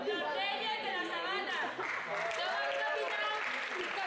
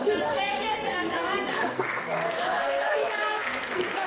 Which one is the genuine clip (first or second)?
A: first